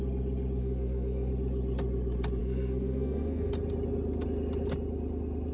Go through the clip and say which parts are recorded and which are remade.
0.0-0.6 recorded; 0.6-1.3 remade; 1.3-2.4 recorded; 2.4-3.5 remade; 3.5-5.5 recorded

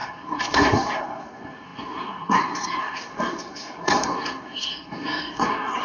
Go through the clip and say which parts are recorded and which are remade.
0.0-5.8 remade

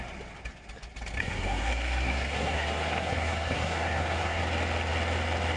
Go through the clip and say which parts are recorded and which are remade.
0.0-1.2 recorded; 1.2-4.4 remade; 4.4-5.6 recorded

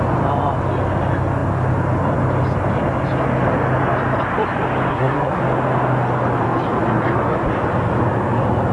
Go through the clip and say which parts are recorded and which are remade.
0.0-4.9 recorded; 4.9-5.4 remade; 5.4-8.7 recorded

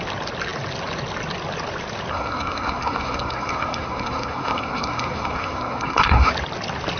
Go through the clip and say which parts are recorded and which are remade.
0.0-2.1 recorded; 2.1-6.3 remade; 6.3-7.0 recorded